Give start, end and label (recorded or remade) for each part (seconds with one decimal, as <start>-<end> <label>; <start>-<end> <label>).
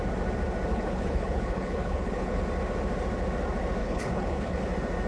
0.0-0.7 recorded; 0.7-2.4 remade; 2.4-3.8 recorded; 3.8-4.6 remade; 4.6-5.1 recorded